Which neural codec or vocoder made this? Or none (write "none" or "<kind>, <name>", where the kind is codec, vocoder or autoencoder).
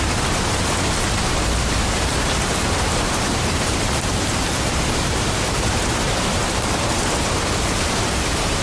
vocoder, BigVGAN v2